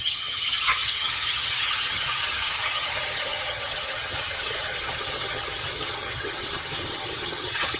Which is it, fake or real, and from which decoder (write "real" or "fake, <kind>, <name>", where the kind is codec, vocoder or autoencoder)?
fake, vocoder, HiFi-GAN